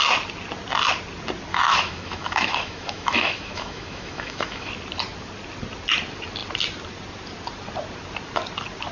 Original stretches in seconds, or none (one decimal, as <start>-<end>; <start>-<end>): 0.0-1.5; 4.7-8.9